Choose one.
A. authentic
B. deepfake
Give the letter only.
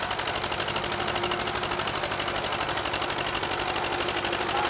A